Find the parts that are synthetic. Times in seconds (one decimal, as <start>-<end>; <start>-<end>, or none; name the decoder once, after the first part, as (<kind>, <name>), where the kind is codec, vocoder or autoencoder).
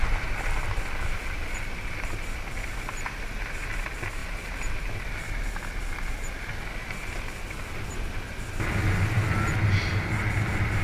none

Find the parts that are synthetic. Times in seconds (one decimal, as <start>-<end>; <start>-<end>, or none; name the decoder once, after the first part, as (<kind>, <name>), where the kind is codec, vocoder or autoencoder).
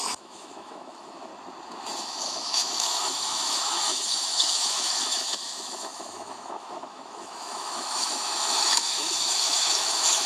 0.0-1.3 (autoencoder, DAC-VAE); 2.0-10.3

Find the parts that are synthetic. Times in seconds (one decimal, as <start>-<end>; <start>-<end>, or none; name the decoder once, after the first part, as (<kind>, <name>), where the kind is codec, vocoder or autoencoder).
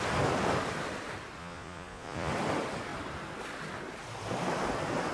1.4-2.3 (vocoder, Vocos)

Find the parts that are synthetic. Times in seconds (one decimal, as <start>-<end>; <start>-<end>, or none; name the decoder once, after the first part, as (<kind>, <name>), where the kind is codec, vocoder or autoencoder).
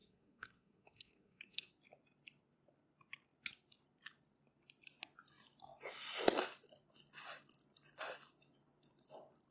0.0-1.7 (codec, SNAC)